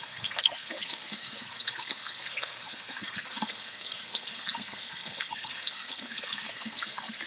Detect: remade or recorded remade